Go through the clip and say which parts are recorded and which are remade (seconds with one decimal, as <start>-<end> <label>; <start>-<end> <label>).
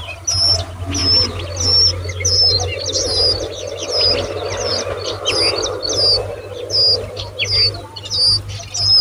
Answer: 0.0-4.7 recorded; 4.7-5.4 remade; 5.4-9.0 recorded